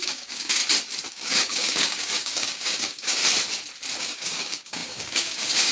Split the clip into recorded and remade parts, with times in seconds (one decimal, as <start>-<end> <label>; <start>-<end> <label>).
0.0-0.6 remade; 0.6-1.1 recorded; 1.1-3.2 remade; 3.2-4.0 recorded; 4.0-5.7 remade